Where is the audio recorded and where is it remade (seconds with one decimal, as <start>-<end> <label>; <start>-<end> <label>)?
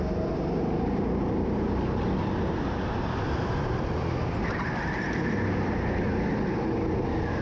0.0-7.4 recorded